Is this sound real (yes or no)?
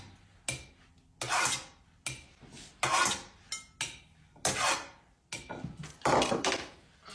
yes